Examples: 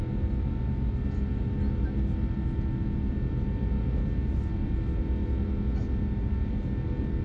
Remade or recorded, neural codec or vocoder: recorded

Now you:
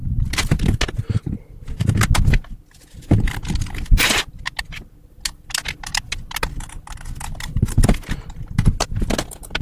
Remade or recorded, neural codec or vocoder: recorded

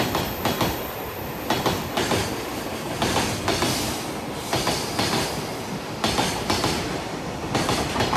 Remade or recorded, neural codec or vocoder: recorded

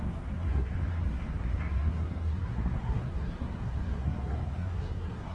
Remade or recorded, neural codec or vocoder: remade, codec, SNAC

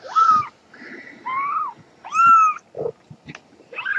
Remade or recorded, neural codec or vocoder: recorded